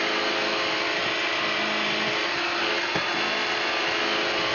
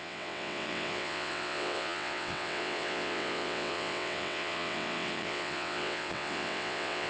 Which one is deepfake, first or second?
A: second